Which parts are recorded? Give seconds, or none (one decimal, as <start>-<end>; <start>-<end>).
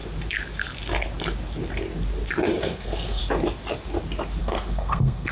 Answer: 0.0-2.6; 3.2-4.4